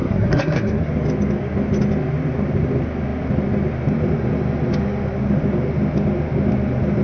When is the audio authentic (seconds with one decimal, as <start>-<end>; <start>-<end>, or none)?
0.9-7.0